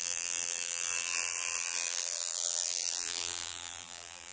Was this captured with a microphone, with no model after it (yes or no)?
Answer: no